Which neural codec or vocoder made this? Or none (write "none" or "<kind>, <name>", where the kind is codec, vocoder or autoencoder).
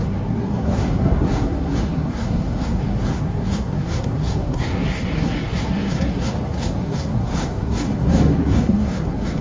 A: codec, SNAC